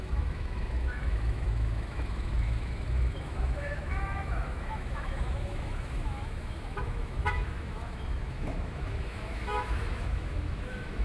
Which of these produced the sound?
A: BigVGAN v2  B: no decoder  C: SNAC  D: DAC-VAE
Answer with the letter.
D